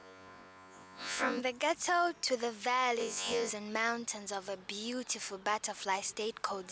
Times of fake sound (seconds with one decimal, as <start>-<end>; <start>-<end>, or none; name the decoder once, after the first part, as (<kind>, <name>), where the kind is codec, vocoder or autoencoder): 0.0-1.4 (vocoder, Vocos); 3.0-3.5